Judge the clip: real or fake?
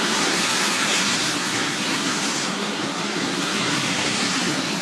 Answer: fake